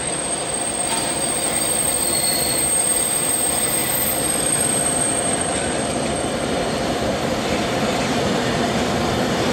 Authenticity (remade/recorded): remade